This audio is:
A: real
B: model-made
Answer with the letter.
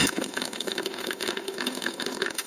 B